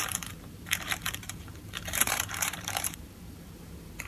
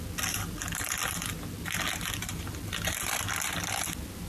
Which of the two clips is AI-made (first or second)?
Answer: first